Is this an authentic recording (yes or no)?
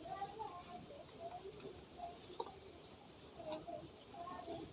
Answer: yes